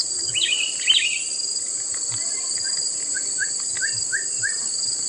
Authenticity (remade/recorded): recorded